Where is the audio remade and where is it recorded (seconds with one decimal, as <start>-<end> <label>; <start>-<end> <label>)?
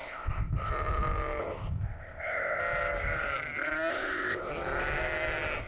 0.0-0.7 remade; 0.7-1.4 recorded; 1.4-2.6 remade; 2.6-3.9 recorded; 3.9-4.5 remade; 4.5-5.7 recorded